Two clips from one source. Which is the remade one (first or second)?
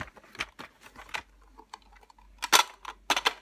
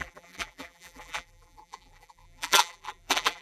second